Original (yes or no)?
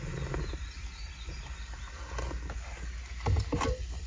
yes